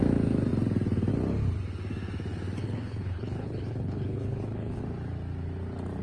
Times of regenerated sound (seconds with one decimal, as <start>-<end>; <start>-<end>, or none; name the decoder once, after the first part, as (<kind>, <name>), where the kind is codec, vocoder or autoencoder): 2.6-4.8 (codec, HILCodec)